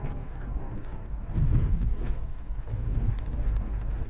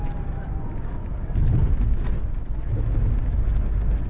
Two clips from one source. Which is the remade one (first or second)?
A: first